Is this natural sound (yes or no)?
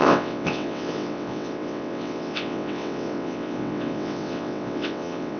no